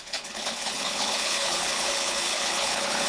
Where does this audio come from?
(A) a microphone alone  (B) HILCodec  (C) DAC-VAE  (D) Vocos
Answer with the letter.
B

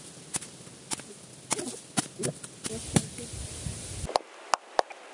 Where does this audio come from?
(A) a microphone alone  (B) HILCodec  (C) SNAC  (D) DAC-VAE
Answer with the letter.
A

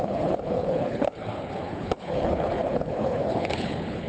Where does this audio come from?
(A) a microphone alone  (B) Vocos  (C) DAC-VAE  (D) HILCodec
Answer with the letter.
D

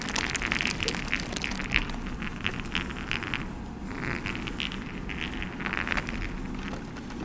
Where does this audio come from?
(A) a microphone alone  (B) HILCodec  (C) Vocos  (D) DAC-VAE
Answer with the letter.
A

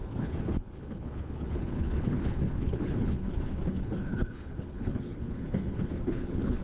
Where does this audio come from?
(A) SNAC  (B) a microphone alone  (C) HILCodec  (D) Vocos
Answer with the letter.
C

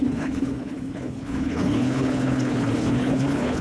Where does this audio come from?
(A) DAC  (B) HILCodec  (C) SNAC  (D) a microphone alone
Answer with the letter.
B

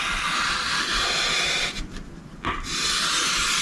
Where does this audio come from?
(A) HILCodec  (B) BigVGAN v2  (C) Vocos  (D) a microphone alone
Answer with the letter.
D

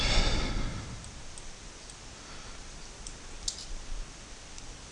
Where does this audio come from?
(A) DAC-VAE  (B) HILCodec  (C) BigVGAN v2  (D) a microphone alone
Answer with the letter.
D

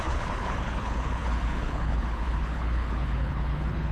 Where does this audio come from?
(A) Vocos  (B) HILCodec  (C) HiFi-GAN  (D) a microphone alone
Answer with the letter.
B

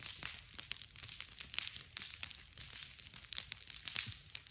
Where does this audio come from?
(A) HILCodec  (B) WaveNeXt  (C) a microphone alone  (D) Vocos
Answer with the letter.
C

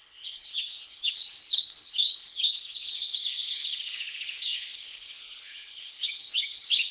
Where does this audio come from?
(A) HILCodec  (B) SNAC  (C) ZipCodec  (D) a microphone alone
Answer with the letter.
A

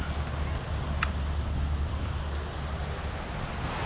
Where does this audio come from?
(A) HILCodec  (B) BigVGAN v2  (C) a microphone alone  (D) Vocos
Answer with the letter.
C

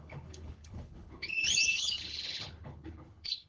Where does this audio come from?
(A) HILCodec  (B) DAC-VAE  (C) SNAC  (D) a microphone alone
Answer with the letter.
A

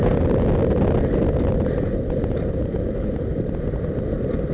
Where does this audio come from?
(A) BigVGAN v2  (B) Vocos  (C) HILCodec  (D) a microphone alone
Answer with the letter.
D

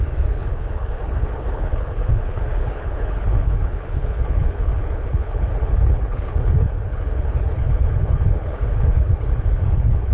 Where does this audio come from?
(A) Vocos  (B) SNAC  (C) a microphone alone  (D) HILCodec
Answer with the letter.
D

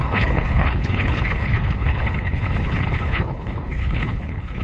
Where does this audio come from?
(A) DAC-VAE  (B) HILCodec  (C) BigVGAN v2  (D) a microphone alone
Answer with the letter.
B